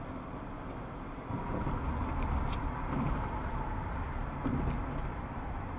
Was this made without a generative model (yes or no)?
yes